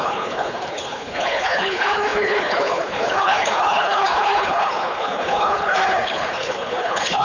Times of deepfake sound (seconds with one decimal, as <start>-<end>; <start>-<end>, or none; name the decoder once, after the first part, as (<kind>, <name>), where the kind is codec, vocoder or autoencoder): 0.0-7.2 (codec, HILCodec)